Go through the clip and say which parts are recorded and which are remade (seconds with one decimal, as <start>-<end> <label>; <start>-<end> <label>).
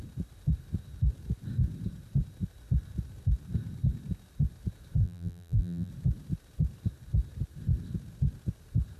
0.0-5.0 recorded; 5.0-5.9 remade; 5.9-9.0 recorded